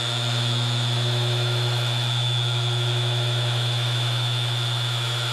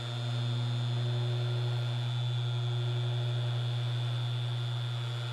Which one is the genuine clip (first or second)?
second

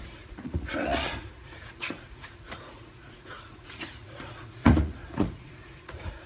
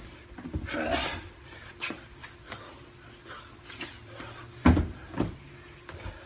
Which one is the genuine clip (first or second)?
second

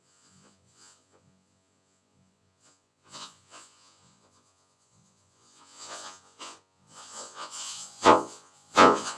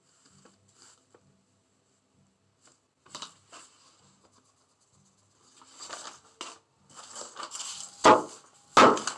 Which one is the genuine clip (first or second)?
second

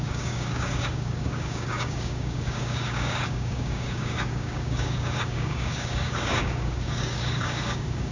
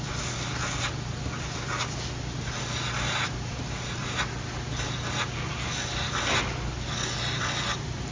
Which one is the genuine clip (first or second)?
second